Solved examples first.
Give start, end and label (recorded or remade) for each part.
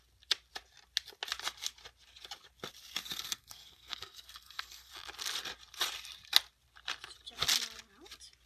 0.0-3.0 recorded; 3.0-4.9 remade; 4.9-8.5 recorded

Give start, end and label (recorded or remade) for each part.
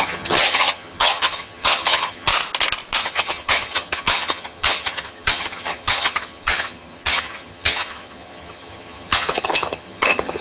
0.0-2.3 remade; 2.3-3.0 recorded; 3.0-10.4 remade